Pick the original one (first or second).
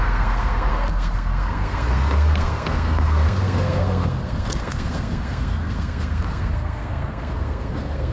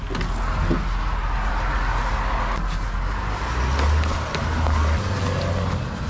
second